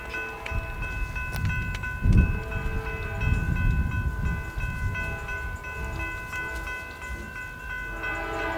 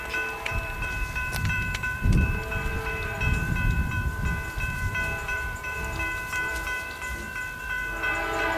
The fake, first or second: second